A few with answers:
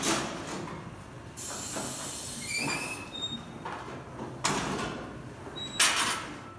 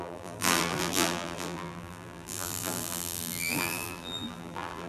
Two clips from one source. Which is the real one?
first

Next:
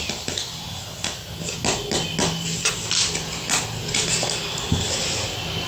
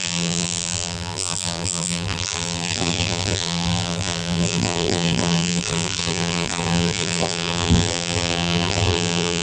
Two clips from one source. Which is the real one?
first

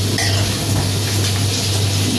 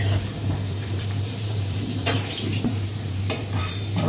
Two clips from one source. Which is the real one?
first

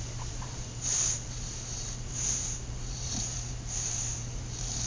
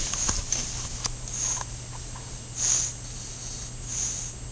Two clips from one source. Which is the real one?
second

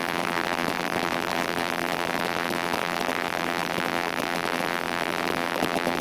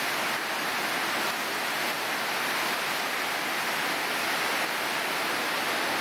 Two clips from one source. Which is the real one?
second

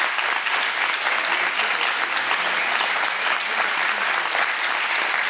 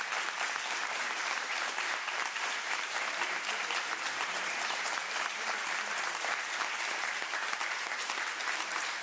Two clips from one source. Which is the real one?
first